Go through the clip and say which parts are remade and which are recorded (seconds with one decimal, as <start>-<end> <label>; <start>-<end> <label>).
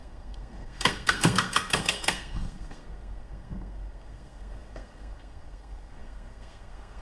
0.0-7.0 remade